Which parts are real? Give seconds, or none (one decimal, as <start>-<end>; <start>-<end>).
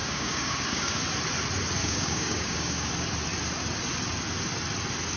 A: 1.0-1.8; 2.9-5.2